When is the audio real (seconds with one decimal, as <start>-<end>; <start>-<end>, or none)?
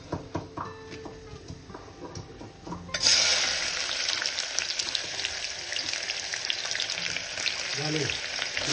0.0-8.7